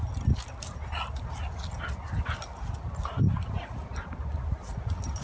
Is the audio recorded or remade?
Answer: recorded